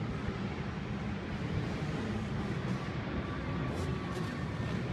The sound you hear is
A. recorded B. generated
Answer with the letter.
A